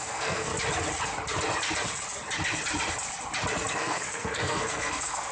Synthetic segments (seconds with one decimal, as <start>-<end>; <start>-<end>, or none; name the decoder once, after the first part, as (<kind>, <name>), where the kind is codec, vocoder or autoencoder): 0.0-0.5 (codec, SNAC); 3.7-5.3